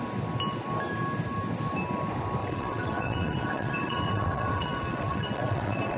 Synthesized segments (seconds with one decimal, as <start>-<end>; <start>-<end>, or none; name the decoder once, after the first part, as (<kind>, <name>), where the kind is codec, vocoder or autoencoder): 2.4-6.0 (vocoder, WaveNeXt)